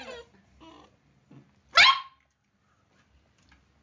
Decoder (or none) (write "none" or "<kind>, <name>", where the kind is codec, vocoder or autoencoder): none